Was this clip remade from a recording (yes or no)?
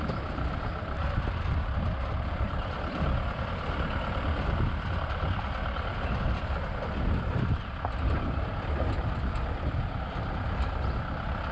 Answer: yes